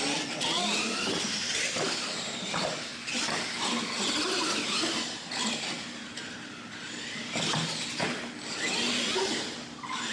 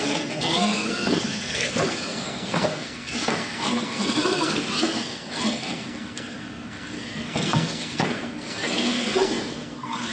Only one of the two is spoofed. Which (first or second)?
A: second